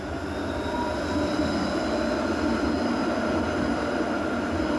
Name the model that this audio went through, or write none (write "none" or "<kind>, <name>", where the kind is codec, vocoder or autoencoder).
none